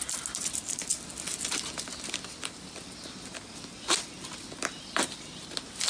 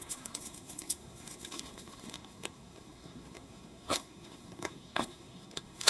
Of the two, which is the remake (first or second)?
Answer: second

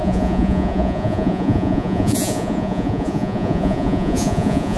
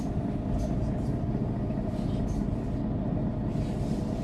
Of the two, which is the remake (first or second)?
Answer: first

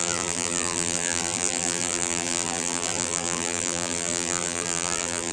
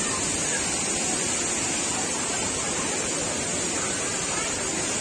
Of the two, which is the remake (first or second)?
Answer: first